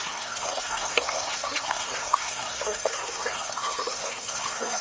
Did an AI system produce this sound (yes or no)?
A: yes